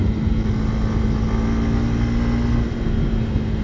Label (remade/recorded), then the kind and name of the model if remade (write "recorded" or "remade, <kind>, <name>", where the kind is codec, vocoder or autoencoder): recorded